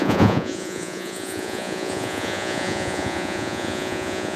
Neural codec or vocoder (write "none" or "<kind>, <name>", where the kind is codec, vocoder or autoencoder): vocoder, Vocos